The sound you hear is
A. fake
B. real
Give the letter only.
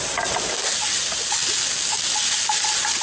B